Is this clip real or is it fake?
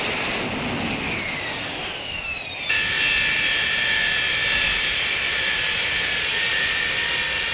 real